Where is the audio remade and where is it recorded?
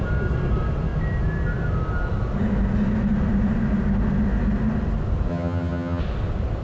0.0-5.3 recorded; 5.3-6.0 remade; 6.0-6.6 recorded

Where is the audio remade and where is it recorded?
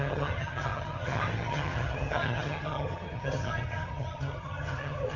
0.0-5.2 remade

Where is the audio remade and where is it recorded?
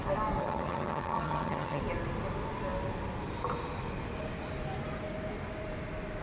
0.0-0.4 recorded; 0.4-1.8 remade; 1.8-6.2 recorded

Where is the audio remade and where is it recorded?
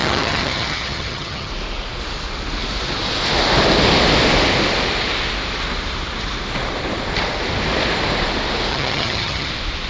0.0-1.5 remade; 1.5-8.7 recorded; 8.7-9.5 remade; 9.5-9.9 recorded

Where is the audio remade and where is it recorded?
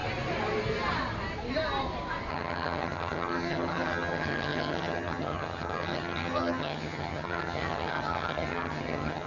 0.0-2.3 recorded; 2.3-9.3 remade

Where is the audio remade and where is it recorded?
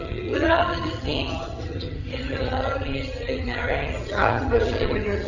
0.0-5.3 remade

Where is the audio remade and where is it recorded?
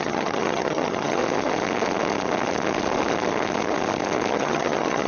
0.0-1.2 remade; 1.2-4.3 recorded; 4.3-5.1 remade